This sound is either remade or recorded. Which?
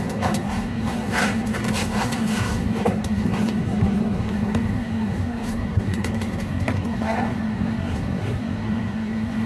remade